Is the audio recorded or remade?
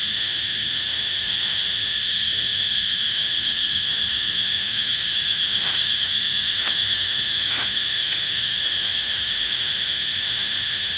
remade